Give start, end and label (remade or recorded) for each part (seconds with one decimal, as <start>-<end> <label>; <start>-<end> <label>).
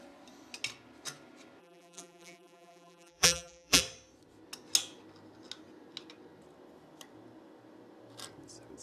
0.0-1.6 recorded; 1.6-3.8 remade; 3.8-8.8 recorded